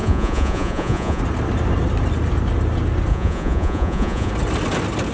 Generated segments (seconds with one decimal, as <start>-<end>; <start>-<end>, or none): 0.0-1.2; 3.1-4.3